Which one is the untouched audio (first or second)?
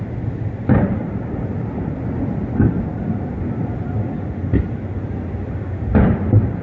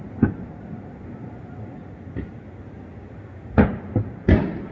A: second